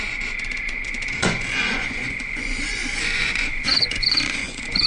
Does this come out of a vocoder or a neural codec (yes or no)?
yes